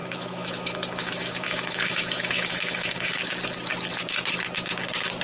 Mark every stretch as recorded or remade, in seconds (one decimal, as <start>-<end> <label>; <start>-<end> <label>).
0.0-3.1 remade; 3.1-5.2 recorded